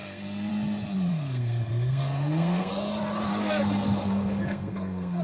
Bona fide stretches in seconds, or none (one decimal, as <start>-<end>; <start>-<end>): 0.5-1.1; 2.7-3.3